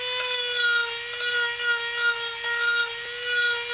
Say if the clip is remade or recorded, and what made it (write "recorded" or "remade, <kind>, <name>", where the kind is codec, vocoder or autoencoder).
recorded